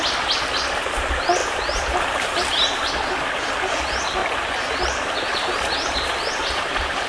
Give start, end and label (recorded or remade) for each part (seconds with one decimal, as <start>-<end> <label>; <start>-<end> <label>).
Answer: 0.0-1.4 recorded; 1.4-3.5 remade; 3.5-4.2 recorded; 4.2-7.1 remade